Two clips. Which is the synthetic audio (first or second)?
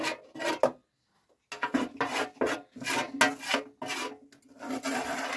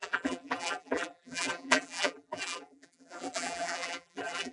second